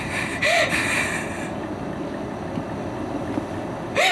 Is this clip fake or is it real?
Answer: real